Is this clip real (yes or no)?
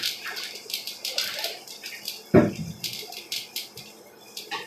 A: no